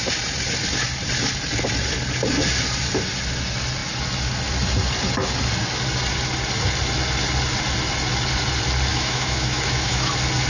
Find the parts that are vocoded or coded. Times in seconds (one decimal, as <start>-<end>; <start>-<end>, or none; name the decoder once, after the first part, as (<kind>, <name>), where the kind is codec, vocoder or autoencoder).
8.9-10.1 (autoencoder, DAC-VAE)